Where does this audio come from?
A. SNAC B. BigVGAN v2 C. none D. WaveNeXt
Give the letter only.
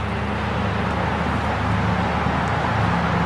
C